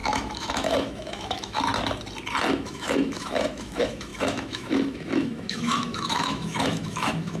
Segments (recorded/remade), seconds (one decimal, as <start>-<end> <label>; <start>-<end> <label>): 0.0-1.7 remade; 1.7-2.5 recorded; 2.5-7.4 remade